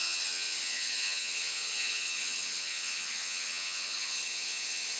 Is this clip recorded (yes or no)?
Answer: no